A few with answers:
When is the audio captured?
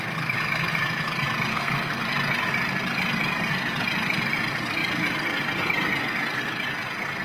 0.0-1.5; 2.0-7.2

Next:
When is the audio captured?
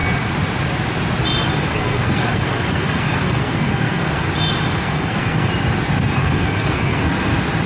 0.0-1.7; 4.3-4.7; 5.5-6.2; 7.1-7.7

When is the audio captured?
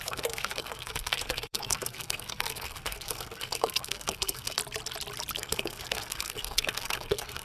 4.6-5.4